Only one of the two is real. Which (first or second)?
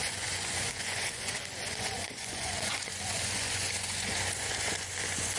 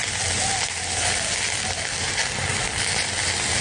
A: second